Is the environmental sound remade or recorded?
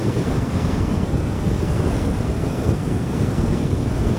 remade